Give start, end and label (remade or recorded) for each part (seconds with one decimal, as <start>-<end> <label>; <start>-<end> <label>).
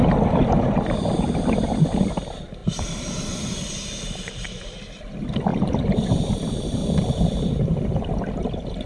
0.0-2.6 recorded; 2.6-4.5 remade; 4.5-5.5 recorded; 5.5-6.3 remade; 6.3-8.9 recorded